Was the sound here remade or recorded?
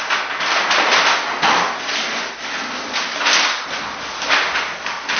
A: recorded